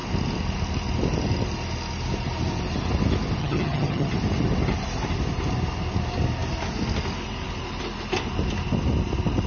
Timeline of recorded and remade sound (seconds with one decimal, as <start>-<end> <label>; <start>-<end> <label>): 0.0-3.4 recorded; 3.4-4.1 remade; 4.1-9.5 recorded